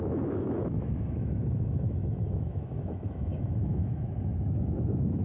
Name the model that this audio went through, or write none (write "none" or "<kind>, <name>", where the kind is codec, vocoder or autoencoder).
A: autoencoder, DAC-VAE